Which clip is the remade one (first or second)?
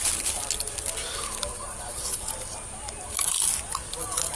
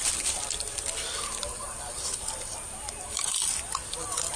second